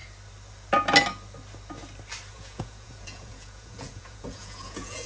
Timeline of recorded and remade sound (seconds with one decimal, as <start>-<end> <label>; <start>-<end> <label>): 0.0-2.3 recorded; 2.3-5.1 remade